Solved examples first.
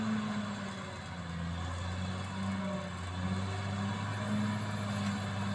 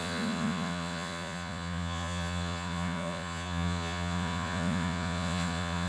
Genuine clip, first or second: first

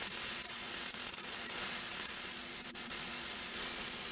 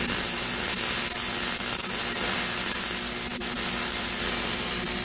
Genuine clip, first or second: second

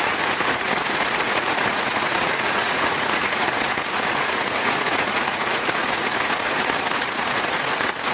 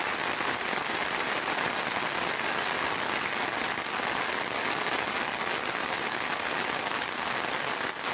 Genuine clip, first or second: second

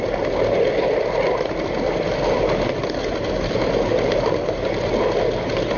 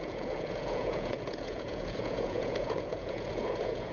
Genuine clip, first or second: first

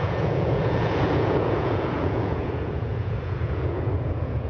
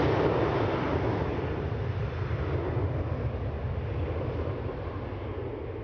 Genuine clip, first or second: second